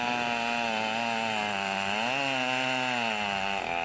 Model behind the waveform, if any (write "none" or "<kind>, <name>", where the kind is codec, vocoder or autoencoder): none